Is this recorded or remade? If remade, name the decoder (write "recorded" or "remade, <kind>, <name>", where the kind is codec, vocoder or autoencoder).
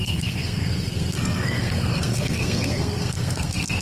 remade, codec, SNAC